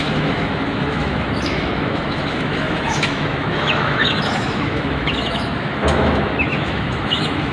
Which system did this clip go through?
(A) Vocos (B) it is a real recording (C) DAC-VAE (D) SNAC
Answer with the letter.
C